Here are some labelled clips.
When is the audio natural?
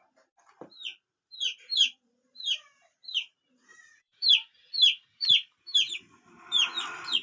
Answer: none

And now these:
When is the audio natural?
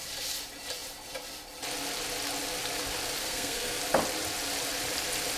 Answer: 0.0-3.2; 3.8-5.4